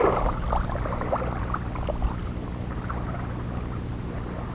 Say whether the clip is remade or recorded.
recorded